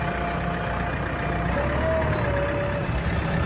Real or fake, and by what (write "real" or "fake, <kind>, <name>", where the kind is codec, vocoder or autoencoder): real